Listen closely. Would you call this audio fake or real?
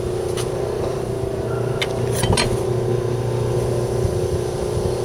real